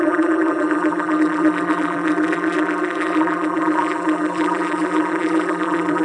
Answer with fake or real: fake